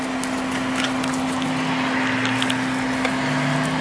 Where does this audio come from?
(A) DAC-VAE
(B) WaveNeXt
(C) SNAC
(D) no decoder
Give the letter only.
D